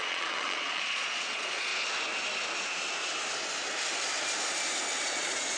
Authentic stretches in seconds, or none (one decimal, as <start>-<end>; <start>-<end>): 1.7-5.1